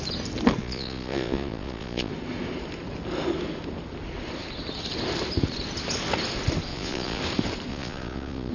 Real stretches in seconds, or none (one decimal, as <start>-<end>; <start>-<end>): 0.0-0.6; 2.1-6.7; 7.2-7.7